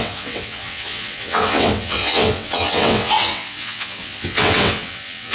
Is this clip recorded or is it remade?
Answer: remade